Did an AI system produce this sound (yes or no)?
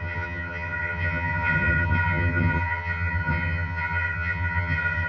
yes